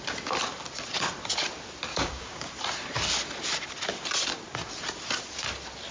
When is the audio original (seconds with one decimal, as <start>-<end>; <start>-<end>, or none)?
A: 0.0-1.9; 2.5-5.9